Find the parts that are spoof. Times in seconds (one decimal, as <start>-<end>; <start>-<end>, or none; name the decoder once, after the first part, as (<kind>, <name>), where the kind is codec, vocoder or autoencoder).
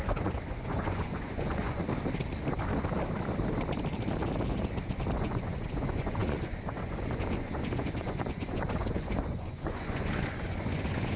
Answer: 0.0-1.8 (vocoder, Vocos); 5.2-11.2